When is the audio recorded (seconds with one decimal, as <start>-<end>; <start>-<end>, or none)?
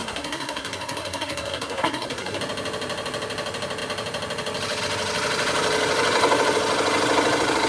2.4-7.7